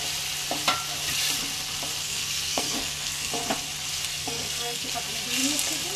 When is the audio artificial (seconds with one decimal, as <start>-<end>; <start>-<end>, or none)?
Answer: 2.0-3.3; 4.1-4.9